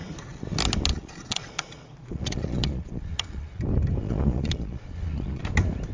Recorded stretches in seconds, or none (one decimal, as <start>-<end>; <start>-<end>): 0.0-0.9; 3.6-4.0; 5.4-5.9